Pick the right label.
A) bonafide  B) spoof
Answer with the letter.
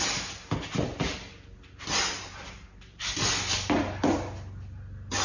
A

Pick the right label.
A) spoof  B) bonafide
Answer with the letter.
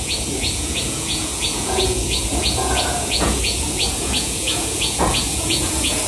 A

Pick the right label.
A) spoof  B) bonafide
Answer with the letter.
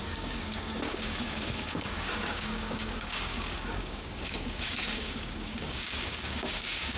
A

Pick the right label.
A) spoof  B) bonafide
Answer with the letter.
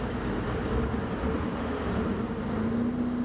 B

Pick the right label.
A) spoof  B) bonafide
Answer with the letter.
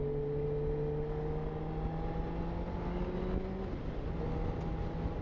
B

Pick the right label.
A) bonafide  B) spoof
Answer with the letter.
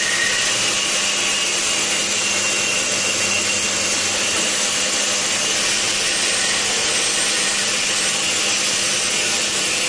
A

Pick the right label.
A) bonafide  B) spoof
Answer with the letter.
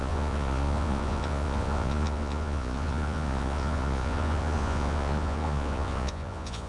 B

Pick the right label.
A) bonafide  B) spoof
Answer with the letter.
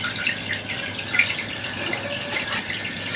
A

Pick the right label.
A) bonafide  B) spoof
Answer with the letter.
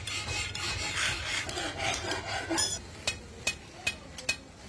A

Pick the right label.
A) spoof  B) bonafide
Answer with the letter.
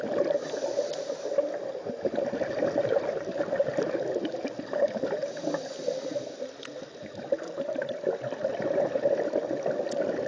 B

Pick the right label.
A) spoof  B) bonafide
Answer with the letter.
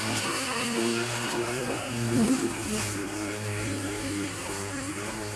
A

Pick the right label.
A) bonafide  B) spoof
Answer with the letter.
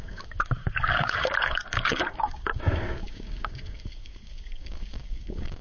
B